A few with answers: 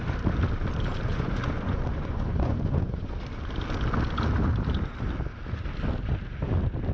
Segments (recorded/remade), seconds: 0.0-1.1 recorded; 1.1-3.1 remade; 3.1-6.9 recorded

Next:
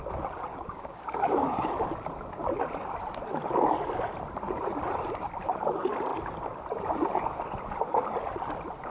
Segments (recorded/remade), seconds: 0.0-0.5 recorded; 0.5-1.7 remade; 1.7-8.9 recorded

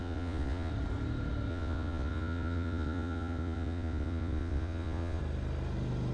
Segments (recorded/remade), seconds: 0.0-0.7 remade; 0.7-1.5 recorded; 1.5-5.2 remade; 5.2-6.1 recorded

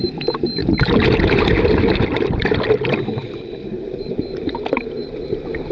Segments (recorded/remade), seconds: 0.0-0.6 remade; 0.6-4.0 recorded; 4.0-5.7 remade

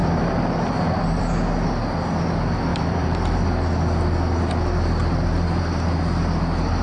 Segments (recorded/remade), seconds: 0.0-2.7 recorded; 2.7-3.5 remade; 3.5-5.0 recorded; 5.0-5.6 remade; 5.6-6.8 recorded

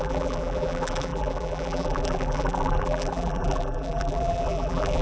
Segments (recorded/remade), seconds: 0.0-5.0 remade